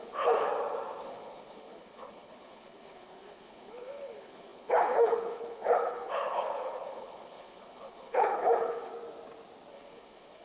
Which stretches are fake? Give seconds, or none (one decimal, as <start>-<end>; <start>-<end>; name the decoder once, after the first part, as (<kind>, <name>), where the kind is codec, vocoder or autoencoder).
0.0-0.5 (codec, HILCodec); 1.0-8.9; 9.7-10.4